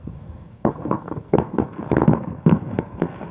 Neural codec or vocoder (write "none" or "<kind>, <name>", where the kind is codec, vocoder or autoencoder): codec, SNAC